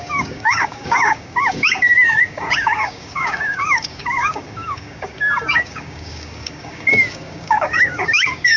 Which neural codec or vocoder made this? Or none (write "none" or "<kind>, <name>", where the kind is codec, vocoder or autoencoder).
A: codec, DAC